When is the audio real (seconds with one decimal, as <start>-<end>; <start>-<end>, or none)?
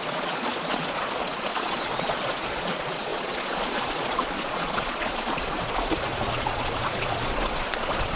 none